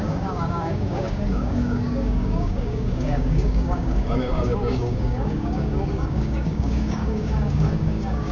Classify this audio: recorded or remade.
remade